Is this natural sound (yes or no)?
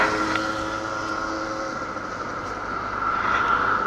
yes